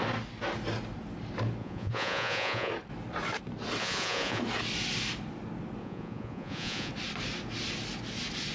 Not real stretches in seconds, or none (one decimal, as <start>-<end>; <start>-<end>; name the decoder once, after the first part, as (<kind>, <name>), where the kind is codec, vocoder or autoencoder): 1.6-2.7 (vocoder, Vocos); 3.8-4.4; 5.8-6.9